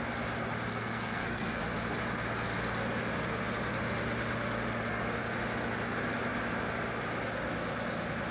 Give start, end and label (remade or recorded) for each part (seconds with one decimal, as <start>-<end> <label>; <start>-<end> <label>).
0.0-0.7 recorded; 0.7-1.6 remade; 1.6-8.3 recorded